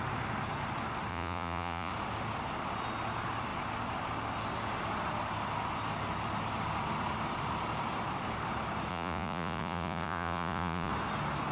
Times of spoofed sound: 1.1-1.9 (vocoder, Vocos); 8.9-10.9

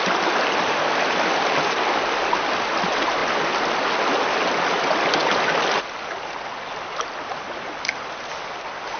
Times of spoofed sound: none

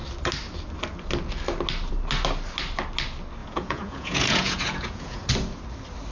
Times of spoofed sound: 3.4-5.3 (vocoder, Vocos)

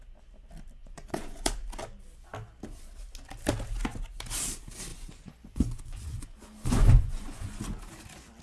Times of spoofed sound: 0.8-1.5 (vocoder, Vocos); 4.9-7.6

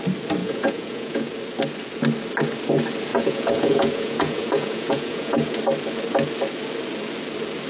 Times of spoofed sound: 0.4-1.3 (vocoder, Vocos); 3.1-5.6

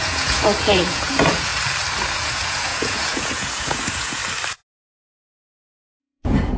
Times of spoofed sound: 0.0-1.5 (vocoder, Vocos); 2.1-4.2; 6.0-6.6